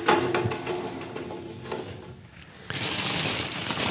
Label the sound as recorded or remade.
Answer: recorded